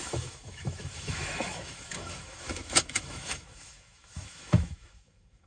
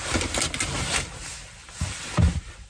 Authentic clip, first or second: second